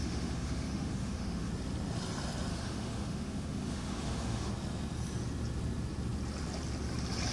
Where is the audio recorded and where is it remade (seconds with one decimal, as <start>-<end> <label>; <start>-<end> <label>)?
0.0-1.5 remade; 1.5-2.5 recorded; 2.5-4.5 remade; 4.5-7.3 recorded